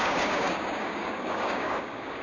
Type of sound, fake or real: fake